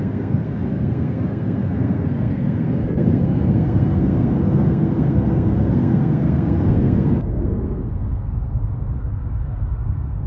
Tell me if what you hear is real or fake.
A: fake